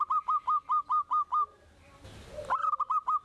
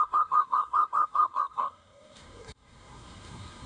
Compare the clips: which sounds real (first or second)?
first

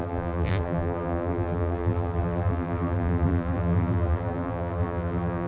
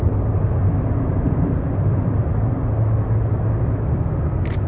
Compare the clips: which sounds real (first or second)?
second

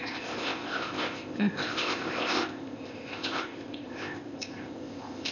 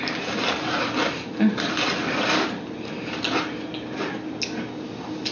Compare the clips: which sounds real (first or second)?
second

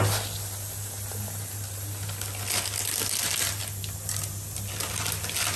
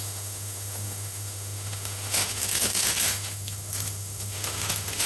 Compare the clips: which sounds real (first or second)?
first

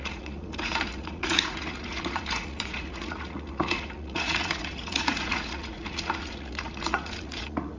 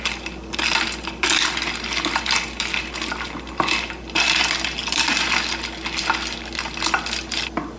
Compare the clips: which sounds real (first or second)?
second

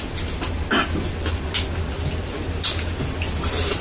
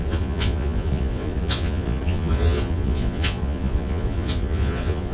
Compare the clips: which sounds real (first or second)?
first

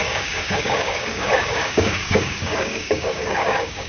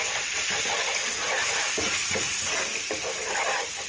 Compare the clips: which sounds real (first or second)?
second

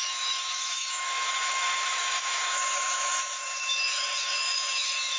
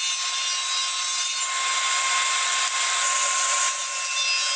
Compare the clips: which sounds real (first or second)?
second